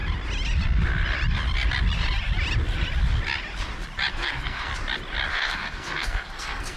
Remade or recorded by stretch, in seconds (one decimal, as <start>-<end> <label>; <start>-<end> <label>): 0.0-4.1 recorded; 4.1-4.7 remade; 4.7-5.3 recorded; 5.3-6.8 remade

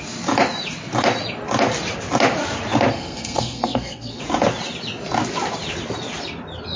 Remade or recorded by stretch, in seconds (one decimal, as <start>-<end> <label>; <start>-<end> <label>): 0.0-2.9 recorded; 2.9-4.2 remade; 4.2-6.8 recorded